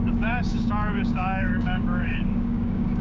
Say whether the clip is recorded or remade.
remade